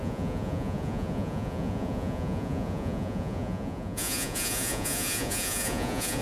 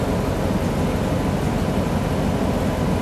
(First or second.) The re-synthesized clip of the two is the first